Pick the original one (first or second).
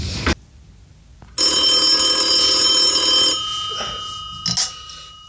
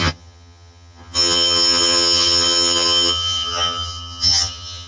first